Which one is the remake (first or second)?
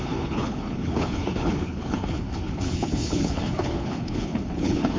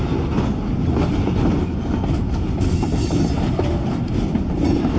first